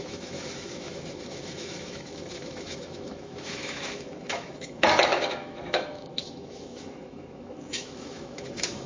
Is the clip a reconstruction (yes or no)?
yes